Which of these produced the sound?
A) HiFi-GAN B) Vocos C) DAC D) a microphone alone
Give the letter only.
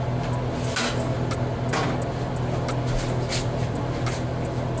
D